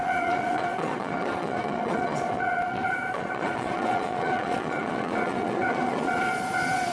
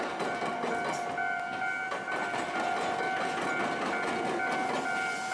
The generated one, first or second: first